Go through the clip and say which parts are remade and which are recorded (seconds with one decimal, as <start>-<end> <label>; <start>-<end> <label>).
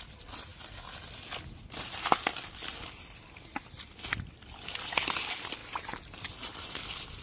0.0-7.2 recorded